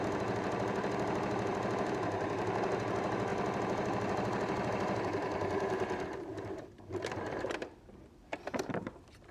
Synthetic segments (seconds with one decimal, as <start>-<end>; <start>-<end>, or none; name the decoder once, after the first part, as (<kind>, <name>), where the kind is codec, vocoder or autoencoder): 3.3-8.6 (vocoder, BigVGAN v2)